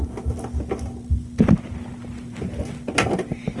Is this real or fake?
real